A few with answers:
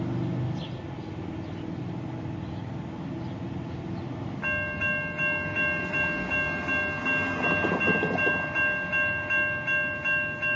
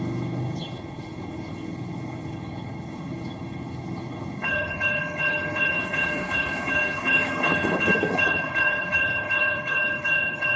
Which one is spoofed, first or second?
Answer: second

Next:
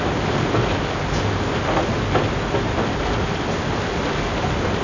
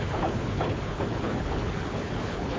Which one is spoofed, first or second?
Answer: second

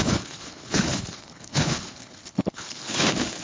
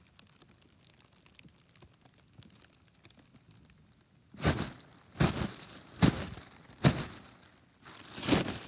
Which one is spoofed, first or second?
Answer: first